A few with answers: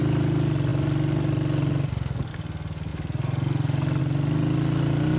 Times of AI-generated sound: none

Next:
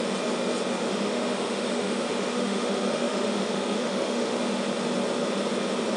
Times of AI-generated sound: 0.8-4.4 (autoencoder, DAC-VAE)